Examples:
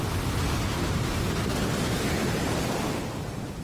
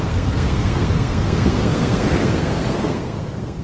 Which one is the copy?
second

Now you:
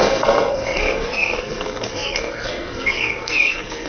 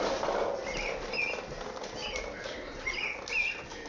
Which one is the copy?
first